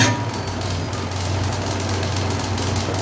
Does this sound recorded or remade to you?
recorded